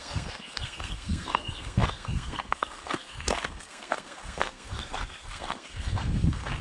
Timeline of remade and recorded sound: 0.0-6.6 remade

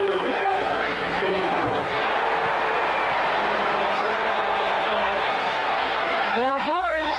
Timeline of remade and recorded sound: 0.0-2.1 remade; 2.1-3.9 recorded; 3.9-7.2 remade

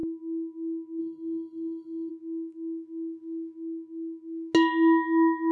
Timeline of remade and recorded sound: 0.0-1.0 recorded; 1.0-2.1 remade; 2.1-5.5 recorded